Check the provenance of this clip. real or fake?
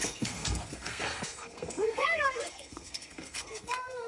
fake